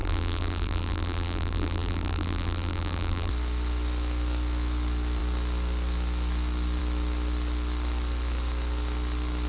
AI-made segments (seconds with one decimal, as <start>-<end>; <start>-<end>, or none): 0.0-3.3